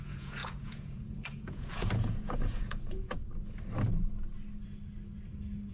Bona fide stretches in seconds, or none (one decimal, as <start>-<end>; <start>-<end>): 3.2-5.7